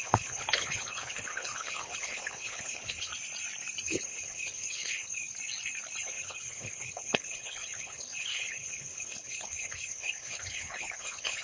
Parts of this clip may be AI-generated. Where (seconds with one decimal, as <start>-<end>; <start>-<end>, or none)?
0.0-3.1; 3.8-5.2; 6.0-11.4